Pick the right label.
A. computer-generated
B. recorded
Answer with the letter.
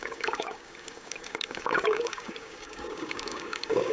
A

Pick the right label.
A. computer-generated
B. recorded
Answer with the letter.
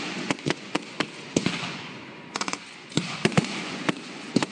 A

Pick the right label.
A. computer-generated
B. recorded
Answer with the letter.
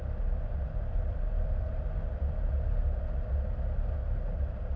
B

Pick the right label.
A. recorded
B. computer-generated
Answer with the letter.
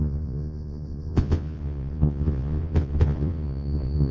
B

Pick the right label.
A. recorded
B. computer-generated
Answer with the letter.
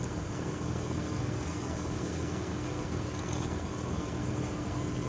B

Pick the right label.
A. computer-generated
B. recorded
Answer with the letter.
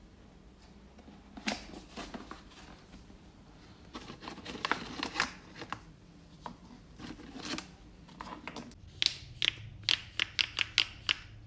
B